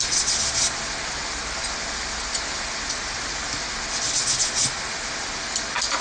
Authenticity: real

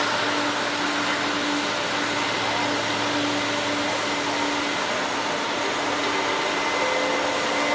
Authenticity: real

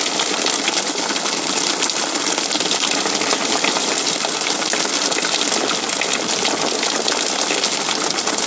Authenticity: real